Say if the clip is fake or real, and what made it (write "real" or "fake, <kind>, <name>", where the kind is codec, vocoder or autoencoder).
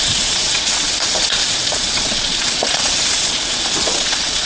fake, vocoder, Vocos